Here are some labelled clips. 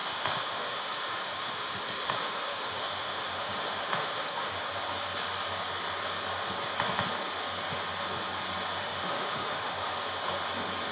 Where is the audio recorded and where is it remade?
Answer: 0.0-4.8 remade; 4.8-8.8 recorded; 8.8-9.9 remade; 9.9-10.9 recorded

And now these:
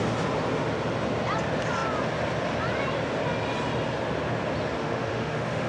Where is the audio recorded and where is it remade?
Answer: 0.0-4.8 recorded; 4.8-5.7 remade

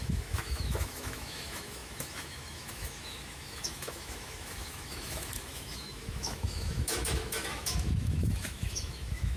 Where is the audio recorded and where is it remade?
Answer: 0.0-9.4 remade

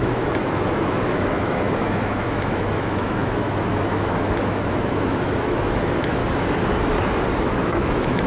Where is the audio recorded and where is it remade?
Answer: 0.0-6.2 remade; 6.2-7.3 recorded; 7.3-8.3 remade

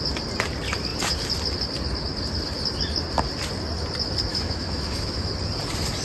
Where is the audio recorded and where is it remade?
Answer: 0.0-4.3 recorded; 4.3-5.3 remade; 5.3-6.0 recorded

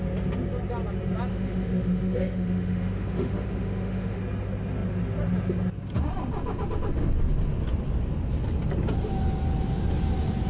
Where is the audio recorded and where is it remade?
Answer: 0.0-1.3 recorded; 1.3-4.2 remade; 4.2-10.5 recorded

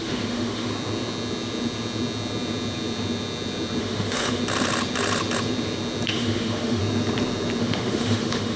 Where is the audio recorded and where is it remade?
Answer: 0.0-0.7 remade; 0.7-3.8 recorded; 3.8-4.4 remade; 4.4-6.1 recorded; 6.1-6.8 remade; 6.8-7.6 recorded; 7.6-8.6 remade

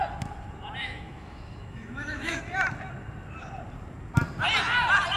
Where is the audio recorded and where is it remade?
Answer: 0.0-0.8 recorded; 0.8-2.4 remade; 2.4-5.2 recorded